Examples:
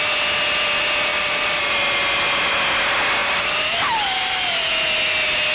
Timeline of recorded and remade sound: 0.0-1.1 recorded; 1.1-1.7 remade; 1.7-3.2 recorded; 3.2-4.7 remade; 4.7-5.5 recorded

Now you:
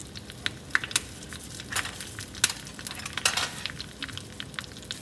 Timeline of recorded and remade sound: 0.0-5.0 recorded

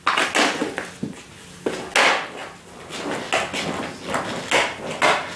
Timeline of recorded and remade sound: 0.0-5.4 recorded